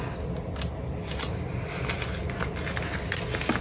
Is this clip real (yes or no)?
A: yes